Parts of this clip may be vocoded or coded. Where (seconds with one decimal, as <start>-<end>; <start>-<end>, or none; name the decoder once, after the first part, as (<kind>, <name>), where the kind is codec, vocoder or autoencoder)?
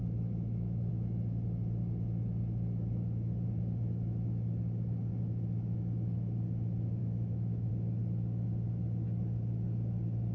0.0-0.9 (autoencoder, DAC-VAE); 7.0-7.7